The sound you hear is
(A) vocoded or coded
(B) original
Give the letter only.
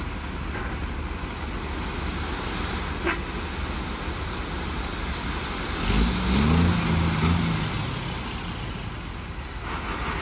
B